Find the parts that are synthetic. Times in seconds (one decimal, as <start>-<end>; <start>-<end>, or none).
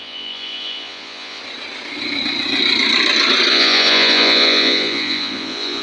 0.0-1.4; 3.5-5.8